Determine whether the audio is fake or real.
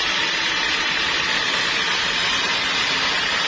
real